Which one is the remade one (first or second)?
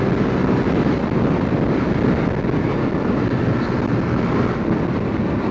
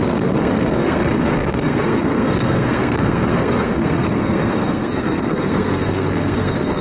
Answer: second